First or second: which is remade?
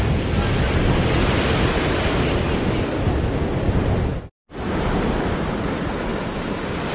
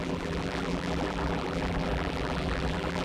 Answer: second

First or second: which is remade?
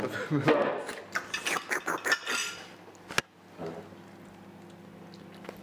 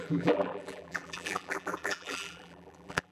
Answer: second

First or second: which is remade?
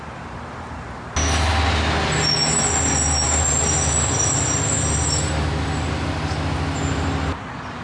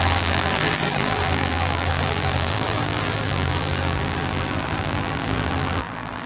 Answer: second